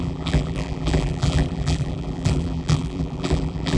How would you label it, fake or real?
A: fake